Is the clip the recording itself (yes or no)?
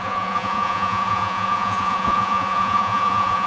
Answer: no